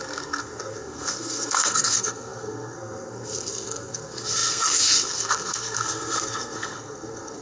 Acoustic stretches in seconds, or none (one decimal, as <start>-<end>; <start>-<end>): none